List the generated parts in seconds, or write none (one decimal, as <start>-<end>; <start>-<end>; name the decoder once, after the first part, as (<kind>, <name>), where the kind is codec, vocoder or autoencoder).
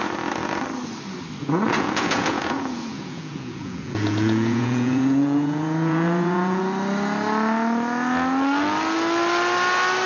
1.4-6.6 (vocoder, Vocos)